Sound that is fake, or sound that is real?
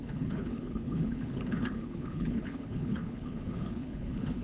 fake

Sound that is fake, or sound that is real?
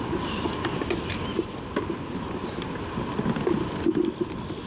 real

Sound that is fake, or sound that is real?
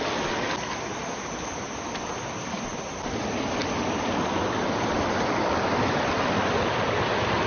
real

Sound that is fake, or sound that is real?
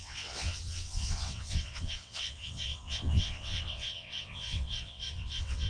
fake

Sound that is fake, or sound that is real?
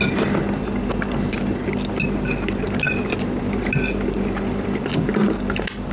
real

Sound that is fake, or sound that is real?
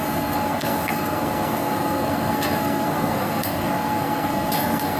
fake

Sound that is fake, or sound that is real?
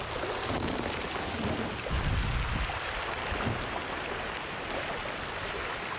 real